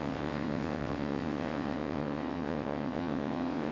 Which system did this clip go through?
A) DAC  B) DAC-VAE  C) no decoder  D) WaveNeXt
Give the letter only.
D